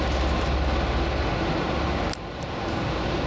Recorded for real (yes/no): yes